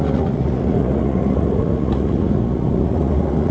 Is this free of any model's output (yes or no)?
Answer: no